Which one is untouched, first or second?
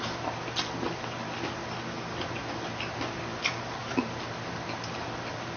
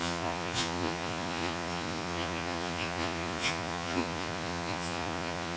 first